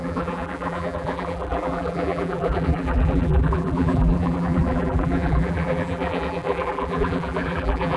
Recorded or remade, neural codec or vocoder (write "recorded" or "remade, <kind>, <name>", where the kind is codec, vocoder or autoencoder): remade, vocoder, BigVGAN v2